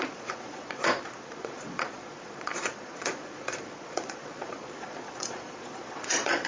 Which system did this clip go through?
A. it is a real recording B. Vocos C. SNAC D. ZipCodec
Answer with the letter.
B